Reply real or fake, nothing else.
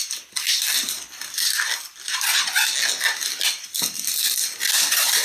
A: real